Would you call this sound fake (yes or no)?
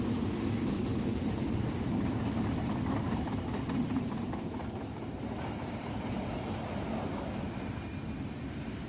no